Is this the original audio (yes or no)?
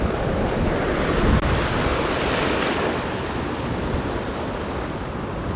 yes